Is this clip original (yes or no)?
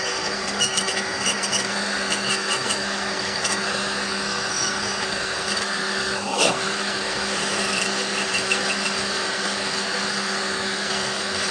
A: no